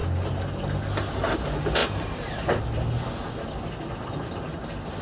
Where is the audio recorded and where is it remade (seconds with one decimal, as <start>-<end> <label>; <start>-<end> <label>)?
0.0-5.0 recorded